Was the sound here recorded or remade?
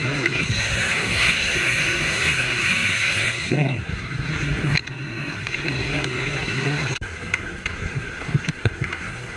remade